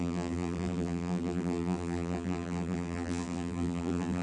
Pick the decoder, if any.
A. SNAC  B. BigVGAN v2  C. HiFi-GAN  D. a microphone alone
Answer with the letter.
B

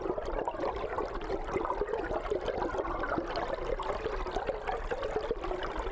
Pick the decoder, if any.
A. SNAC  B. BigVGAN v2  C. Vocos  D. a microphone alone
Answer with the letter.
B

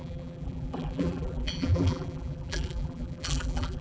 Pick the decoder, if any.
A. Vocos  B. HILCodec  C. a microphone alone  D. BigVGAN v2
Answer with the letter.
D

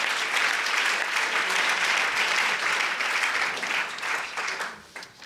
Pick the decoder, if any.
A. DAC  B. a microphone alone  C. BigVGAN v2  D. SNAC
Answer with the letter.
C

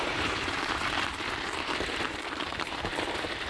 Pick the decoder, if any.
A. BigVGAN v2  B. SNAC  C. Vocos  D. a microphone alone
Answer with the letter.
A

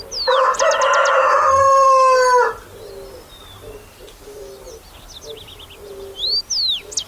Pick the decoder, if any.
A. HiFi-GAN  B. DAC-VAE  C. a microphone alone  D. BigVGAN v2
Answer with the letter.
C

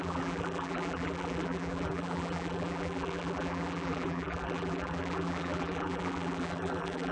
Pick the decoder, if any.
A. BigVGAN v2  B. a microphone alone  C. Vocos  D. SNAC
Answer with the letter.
A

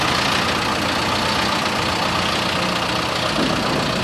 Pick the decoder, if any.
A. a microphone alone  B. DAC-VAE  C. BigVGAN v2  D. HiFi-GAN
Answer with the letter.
A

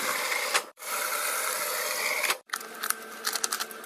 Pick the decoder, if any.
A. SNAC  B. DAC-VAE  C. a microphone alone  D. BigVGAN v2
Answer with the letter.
D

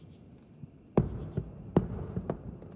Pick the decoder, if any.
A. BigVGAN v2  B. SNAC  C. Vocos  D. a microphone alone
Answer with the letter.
D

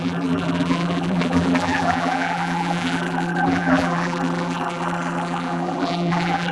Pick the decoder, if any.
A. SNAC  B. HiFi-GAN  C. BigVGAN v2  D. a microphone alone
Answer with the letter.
C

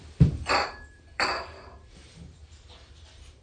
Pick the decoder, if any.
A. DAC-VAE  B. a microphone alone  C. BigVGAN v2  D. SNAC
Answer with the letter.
C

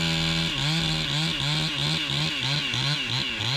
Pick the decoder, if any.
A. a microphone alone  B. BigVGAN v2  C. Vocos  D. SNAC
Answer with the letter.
A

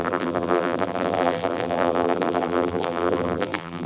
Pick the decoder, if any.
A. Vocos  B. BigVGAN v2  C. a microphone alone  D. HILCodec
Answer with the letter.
B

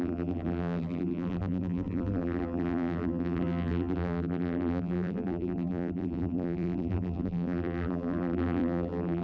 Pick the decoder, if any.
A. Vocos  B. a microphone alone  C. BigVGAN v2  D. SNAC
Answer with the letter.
C